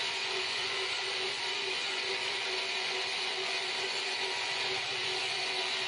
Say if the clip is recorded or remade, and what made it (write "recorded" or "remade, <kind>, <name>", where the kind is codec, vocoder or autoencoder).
remade, vocoder, Vocos